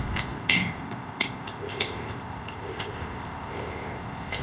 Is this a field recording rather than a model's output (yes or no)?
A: no